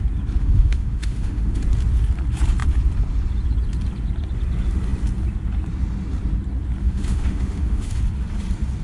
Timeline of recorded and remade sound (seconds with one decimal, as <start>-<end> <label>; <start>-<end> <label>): 0.0-0.4 recorded; 0.4-1.6 remade; 1.6-6.8 recorded; 6.8-8.0 remade; 8.0-8.8 recorded